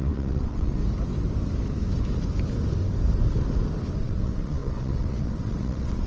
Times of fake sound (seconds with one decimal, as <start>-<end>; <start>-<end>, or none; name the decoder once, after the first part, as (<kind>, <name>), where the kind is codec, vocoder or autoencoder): 0.0-0.8 (vocoder, WaveNeXt); 4.0-6.1